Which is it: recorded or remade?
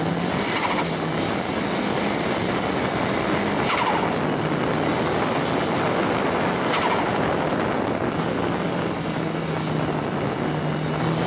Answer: recorded